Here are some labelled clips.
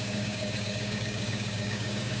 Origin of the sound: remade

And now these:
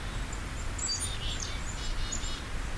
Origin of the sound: recorded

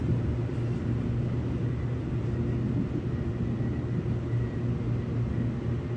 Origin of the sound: recorded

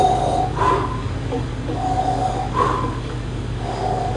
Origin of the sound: remade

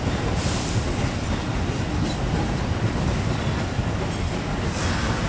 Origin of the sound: recorded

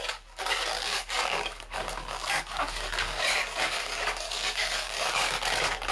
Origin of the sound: remade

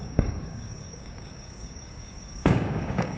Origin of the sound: remade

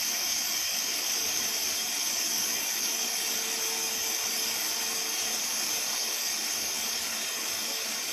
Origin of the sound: remade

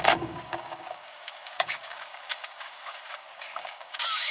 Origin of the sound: remade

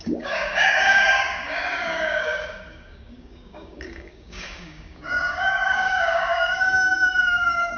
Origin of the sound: remade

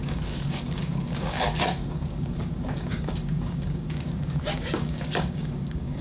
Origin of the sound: remade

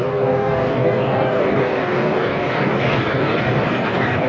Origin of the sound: remade